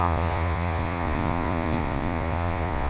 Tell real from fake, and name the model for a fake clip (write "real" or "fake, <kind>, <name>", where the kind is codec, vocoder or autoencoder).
fake, vocoder, Vocos